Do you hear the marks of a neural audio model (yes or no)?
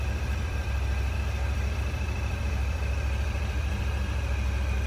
yes